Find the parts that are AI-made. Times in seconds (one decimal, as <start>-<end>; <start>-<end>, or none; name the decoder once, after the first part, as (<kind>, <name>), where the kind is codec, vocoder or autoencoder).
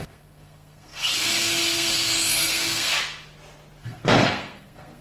0.0-2.9 (codec, SNAC); 3.8-5.0